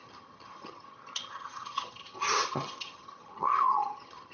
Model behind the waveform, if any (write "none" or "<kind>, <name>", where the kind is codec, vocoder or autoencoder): vocoder, HiFi-GAN